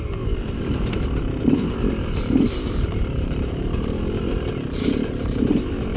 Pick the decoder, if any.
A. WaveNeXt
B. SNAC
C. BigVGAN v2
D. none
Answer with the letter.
C